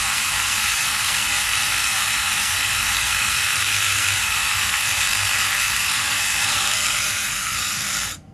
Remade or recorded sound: remade